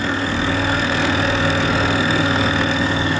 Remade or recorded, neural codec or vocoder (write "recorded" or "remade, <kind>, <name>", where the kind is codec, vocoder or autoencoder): remade, codec, SNAC